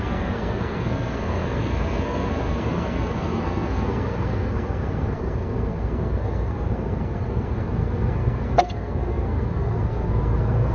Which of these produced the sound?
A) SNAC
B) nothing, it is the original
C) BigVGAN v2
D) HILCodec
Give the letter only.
A